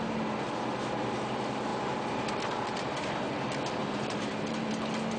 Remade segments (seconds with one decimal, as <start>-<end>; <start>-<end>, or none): 1.7-2.3; 3.8-4.7